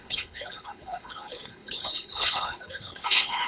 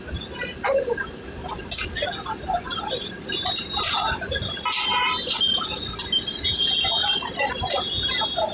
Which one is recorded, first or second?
second